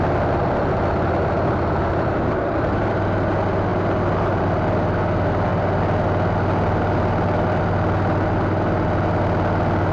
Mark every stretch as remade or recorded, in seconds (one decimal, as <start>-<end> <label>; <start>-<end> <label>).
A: 0.0-9.9 recorded